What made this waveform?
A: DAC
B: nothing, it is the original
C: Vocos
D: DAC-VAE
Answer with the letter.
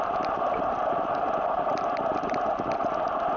B